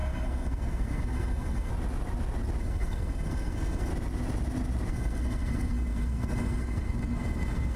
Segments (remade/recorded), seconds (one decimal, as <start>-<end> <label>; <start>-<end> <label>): 0.0-1.7 remade; 1.7-2.6 recorded; 2.6-3.9 remade; 3.9-4.9 recorded; 4.9-7.8 remade